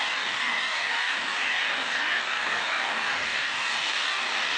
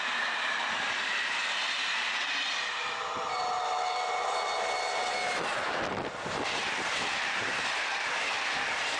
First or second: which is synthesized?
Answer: first